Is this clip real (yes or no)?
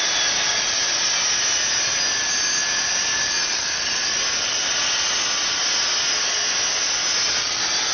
yes